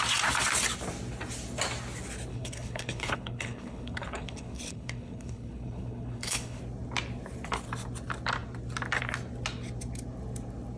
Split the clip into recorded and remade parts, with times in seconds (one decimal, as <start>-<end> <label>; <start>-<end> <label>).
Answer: 0.0-2.3 recorded; 2.3-6.6 remade; 6.6-10.8 recorded